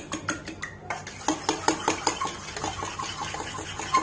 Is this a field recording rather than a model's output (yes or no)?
yes